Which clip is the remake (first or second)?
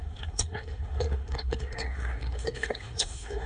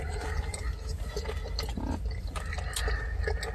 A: first